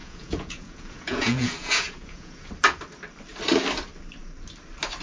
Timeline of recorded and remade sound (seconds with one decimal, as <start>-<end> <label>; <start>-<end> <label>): 0.0-2.5 remade; 2.5-5.0 recorded